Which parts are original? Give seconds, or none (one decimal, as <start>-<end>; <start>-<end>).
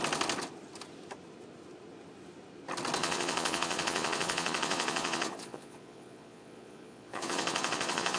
0.0-3.0